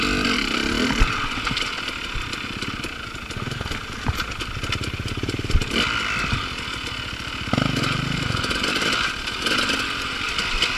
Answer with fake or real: real